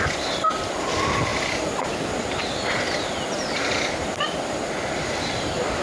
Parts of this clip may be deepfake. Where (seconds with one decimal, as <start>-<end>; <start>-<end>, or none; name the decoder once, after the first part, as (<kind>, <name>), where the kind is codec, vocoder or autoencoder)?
none

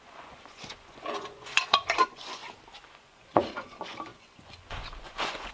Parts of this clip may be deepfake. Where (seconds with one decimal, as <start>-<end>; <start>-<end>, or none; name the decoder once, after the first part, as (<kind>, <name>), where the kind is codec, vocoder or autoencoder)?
0.0-2.4 (vocoder, Vocos); 2.9-5.5

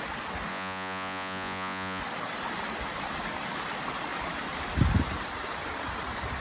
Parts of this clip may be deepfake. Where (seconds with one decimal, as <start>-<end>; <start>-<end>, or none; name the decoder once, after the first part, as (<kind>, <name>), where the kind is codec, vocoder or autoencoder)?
0.5-2.0 (vocoder, Vocos)

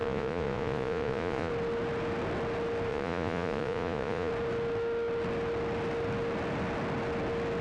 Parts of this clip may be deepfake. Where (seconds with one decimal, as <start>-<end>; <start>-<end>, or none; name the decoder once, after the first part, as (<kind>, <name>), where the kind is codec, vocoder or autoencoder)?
0.0-1.5 (vocoder, Vocos); 2.9-4.3

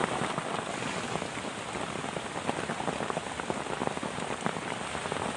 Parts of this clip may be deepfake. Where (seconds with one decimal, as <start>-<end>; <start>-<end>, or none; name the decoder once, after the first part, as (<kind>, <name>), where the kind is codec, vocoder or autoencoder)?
none

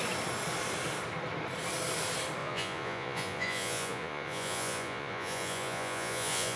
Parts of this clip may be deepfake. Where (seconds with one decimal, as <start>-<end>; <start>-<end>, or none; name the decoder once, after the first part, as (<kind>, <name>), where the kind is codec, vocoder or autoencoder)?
2.4-6.6 (vocoder, Vocos)

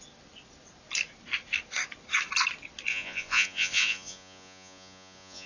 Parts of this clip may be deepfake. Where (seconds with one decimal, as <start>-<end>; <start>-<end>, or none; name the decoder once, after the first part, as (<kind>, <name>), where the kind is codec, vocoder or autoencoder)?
2.9-5.5 (vocoder, Vocos)